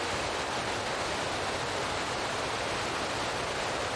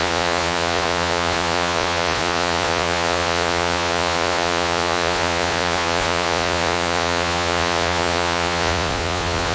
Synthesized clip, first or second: second